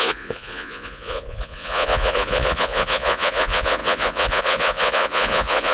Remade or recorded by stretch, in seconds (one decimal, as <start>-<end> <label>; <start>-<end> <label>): 0.0-5.7 remade